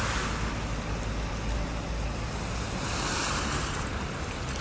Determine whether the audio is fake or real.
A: real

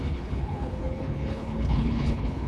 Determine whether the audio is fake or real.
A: fake